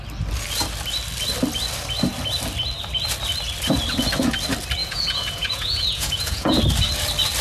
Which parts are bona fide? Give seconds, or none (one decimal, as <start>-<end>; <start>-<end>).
0.0-4.8; 6.6-7.4